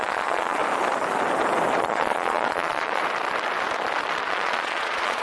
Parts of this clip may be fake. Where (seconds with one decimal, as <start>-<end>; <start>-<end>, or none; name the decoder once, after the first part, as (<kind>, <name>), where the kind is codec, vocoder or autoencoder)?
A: 0.0-0.6 (vocoder, Vocos); 1.8-3.0; 4.3-5.2